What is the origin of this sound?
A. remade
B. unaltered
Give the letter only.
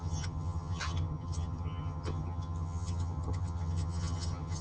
A